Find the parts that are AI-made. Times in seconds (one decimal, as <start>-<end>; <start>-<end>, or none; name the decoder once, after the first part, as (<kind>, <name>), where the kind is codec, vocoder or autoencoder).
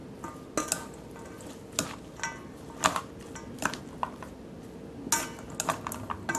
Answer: none